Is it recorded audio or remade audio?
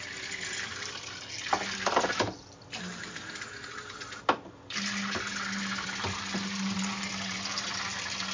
recorded